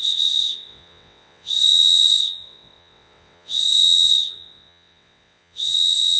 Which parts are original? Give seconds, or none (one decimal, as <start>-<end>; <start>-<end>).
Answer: none